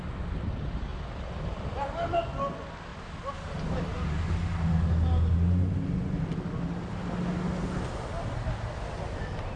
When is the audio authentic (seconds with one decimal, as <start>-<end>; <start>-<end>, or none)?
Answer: 0.0-0.9; 2.2-2.9; 3.5-9.6